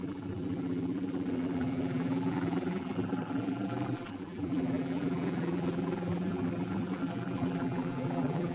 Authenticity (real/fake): fake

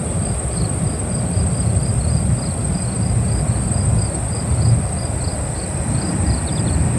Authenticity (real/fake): real